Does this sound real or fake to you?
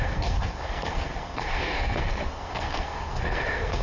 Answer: fake